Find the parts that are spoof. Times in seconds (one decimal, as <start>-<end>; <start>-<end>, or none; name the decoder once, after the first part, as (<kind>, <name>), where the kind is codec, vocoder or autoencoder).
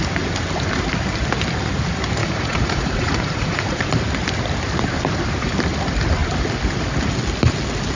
2.2-3.9 (vocoder, Vocos)